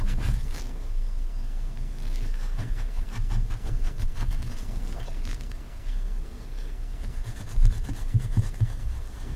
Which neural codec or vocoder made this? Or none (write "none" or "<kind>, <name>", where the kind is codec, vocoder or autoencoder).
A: codec, SNAC